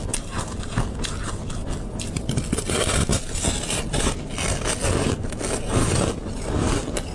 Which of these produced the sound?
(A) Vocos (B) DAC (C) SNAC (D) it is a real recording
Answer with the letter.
D